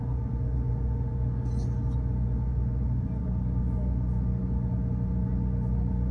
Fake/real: real